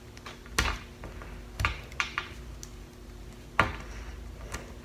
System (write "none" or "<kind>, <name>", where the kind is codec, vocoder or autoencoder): none